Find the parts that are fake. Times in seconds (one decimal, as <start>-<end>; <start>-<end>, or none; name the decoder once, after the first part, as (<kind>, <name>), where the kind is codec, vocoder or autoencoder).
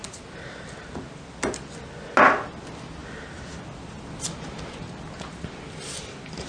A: none